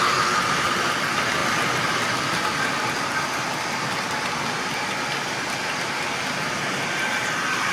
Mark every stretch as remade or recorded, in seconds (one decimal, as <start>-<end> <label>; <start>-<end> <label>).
0.0-7.7 recorded